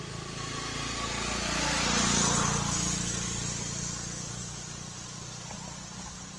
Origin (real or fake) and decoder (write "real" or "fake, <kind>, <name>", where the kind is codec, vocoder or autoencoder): real